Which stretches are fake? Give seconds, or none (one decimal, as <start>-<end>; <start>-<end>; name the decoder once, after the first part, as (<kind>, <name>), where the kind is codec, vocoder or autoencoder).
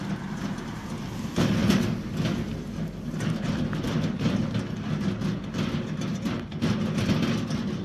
none